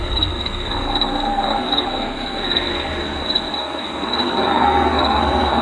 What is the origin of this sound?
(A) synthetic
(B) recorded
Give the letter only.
A